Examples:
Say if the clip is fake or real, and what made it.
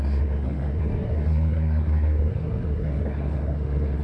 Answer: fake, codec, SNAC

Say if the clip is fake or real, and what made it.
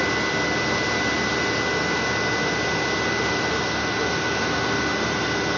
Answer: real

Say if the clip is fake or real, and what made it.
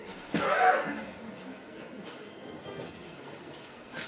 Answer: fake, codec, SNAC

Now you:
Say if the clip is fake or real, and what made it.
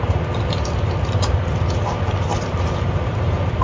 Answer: real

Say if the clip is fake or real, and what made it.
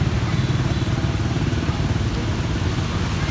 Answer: real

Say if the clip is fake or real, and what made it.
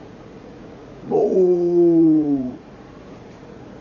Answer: fake, vocoder, Vocos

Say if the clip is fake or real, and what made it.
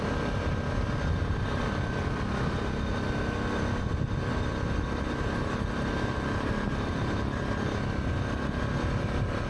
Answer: real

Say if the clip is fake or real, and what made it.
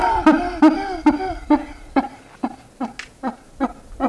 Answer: real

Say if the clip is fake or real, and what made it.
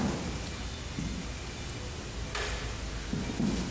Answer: real